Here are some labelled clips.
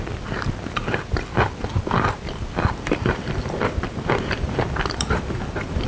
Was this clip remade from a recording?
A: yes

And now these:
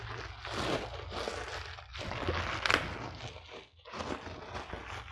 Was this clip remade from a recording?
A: no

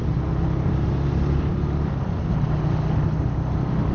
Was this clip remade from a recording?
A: no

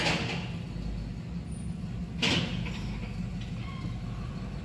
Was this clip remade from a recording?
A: no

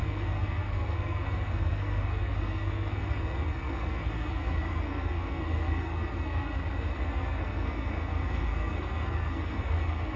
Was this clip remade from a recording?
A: yes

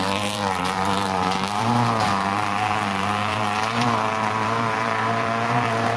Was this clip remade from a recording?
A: yes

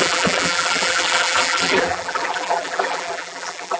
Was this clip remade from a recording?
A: yes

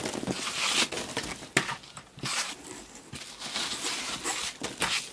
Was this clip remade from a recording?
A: no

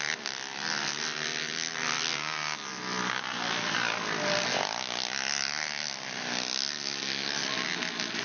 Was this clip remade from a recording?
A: no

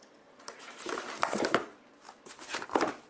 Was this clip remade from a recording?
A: no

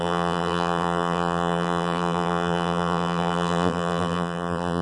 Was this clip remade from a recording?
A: yes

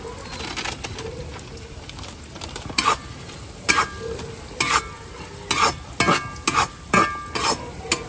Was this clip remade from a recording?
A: no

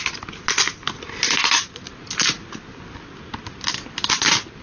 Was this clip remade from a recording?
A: no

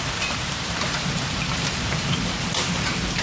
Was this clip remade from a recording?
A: yes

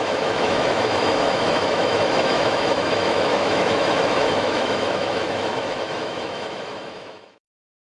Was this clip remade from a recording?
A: yes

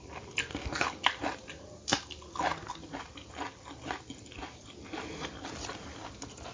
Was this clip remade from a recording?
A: no